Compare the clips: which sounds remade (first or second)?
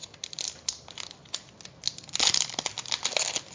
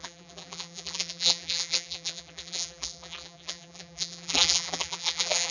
second